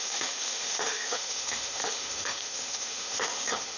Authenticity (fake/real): fake